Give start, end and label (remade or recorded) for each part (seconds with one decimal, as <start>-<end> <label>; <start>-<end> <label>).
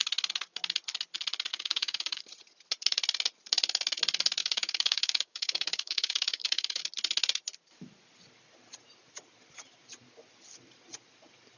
0.0-1.5 recorded; 1.5-2.2 remade; 2.2-4.4 recorded; 4.4-6.8 remade; 6.8-11.6 recorded